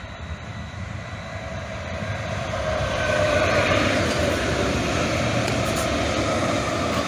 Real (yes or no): no